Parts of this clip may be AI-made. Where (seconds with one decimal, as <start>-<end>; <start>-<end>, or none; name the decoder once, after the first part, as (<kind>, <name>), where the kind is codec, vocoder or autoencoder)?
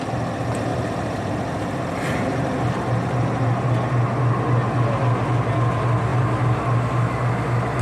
0.7-3.6 (vocoder, BigVGAN v2); 6.1-6.6